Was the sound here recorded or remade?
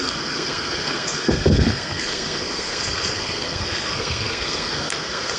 remade